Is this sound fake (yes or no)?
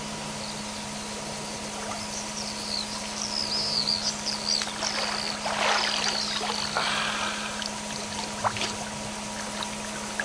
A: no